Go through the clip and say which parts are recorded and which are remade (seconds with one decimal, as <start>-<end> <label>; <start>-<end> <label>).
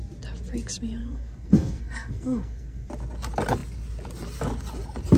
0.0-1.0 recorded; 1.0-2.9 remade; 2.9-5.2 recorded